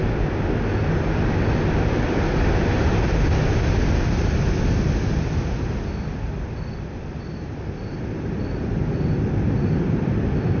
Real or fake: real